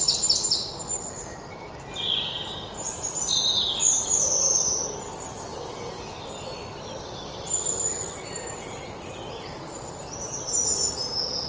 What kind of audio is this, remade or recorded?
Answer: recorded